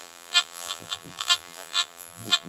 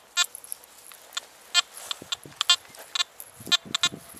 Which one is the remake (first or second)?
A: first